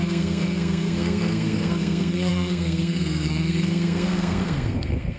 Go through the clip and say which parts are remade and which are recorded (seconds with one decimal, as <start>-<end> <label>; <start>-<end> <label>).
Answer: 0.0-5.2 remade